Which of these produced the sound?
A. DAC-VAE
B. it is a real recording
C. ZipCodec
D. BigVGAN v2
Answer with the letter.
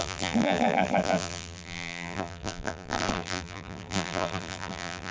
D